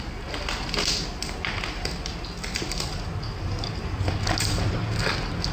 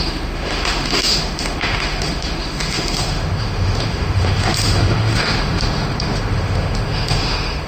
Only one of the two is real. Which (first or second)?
first